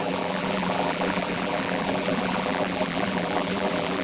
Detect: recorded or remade remade